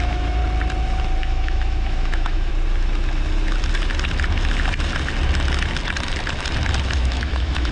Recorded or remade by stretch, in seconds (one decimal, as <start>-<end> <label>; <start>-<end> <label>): 0.0-0.4 remade; 0.4-1.2 recorded; 1.2-2.5 remade; 2.5-7.0 recorded; 7.0-7.7 remade